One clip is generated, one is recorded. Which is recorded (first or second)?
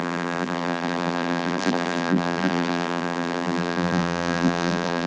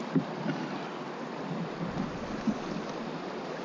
second